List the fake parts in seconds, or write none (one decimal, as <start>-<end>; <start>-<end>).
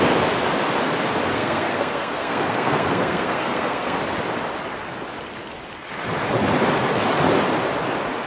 1.3-4.0